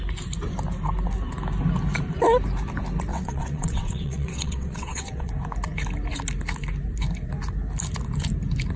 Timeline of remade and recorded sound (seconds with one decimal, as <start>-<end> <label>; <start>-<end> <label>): 0.0-3.1 recorded; 3.1-5.3 remade; 5.3-8.8 recorded